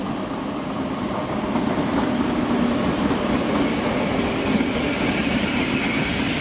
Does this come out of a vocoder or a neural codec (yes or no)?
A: no